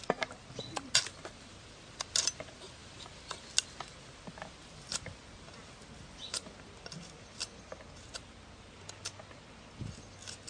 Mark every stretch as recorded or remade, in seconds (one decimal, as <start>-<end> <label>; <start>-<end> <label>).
0.0-10.5 recorded